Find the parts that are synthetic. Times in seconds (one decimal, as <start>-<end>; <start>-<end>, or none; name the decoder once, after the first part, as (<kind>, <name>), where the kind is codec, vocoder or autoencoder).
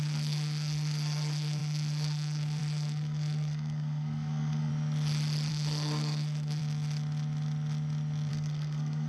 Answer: 0.0-4.7 (codec, SNAC); 5.5-6.6; 8.3-9.1